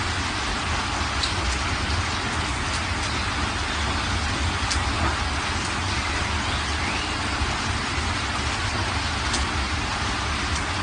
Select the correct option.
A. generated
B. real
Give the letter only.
B